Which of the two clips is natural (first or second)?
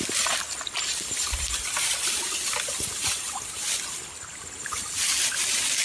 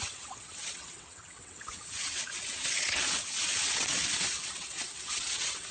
first